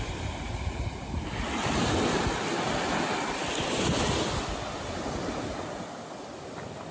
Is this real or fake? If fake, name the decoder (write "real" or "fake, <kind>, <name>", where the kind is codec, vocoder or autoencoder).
real